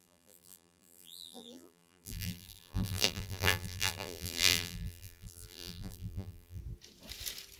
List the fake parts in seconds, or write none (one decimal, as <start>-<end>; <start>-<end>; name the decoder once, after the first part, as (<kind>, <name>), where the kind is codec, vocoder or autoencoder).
0.0-6.6 (vocoder, BigVGAN v2)